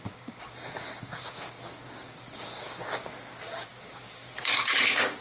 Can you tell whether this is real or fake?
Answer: fake